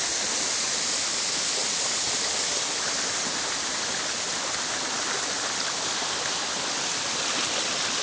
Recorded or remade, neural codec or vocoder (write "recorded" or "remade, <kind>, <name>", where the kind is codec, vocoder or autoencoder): recorded